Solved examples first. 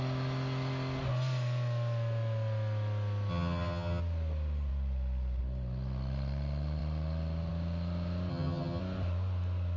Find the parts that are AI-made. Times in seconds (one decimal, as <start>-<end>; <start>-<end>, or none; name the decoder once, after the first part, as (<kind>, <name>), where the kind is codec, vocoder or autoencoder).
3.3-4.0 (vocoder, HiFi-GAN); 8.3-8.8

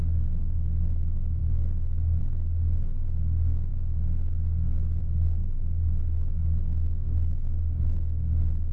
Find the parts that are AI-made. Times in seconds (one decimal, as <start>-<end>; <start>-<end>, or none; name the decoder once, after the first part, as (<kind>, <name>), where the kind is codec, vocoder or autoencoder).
5.4-6.0 (autoencoder, DAC-VAE); 6.4-7.8

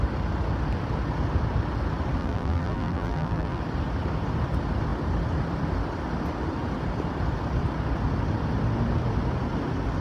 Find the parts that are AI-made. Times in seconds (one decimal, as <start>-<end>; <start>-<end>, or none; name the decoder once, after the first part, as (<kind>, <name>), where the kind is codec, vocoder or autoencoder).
2.2-3.6 (vocoder, BigVGAN v2)

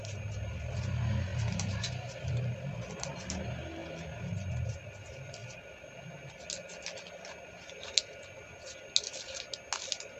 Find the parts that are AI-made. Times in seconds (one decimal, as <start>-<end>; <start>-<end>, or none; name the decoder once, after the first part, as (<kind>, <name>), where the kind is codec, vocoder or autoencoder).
1.3-2.3 (vocoder, BigVGAN v2)

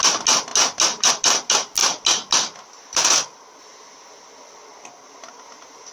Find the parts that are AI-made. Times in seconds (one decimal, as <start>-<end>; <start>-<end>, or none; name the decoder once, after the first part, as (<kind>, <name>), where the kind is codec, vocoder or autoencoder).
none

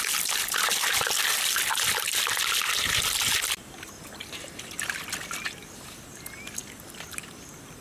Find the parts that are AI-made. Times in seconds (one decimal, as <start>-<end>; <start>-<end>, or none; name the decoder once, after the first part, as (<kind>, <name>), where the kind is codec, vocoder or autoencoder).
none

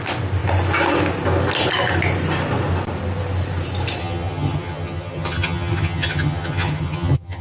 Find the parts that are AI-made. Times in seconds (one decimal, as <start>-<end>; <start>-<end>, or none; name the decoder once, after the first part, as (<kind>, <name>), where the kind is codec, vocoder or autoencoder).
4.0-7.4 (vocoder, HiFi-GAN)